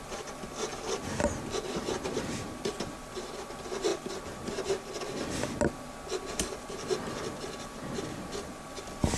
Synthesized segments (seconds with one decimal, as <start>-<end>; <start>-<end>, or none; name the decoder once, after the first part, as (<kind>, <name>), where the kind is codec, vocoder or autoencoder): none